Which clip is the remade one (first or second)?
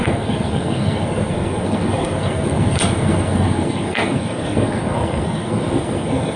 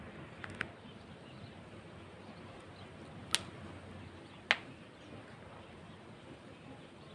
first